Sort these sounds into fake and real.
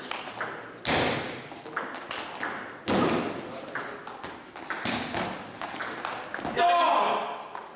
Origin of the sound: real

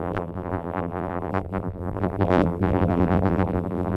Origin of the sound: fake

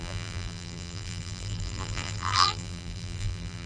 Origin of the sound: fake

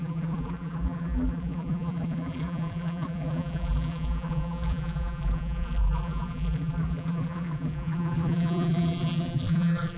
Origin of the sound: fake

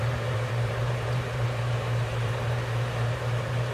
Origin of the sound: fake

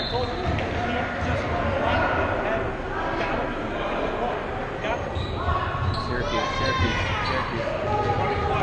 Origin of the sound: real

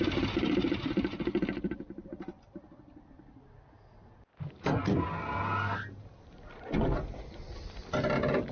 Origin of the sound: real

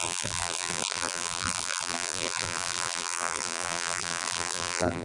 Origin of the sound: fake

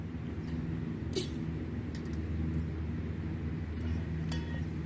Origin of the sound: real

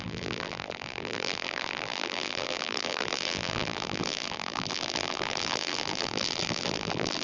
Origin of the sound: fake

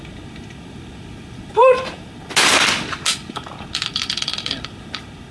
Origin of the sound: real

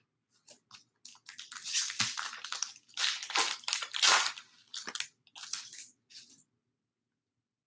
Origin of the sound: real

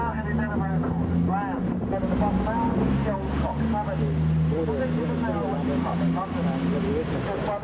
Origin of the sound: real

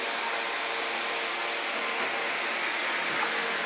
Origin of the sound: real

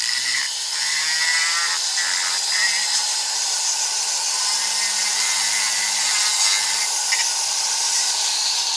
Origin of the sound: fake